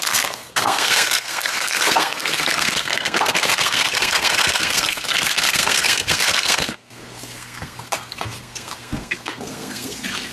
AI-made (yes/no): yes